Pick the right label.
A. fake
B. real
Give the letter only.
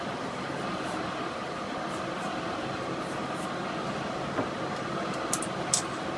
B